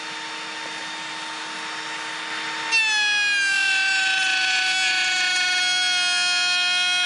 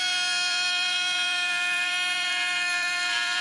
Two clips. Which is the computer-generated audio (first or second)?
second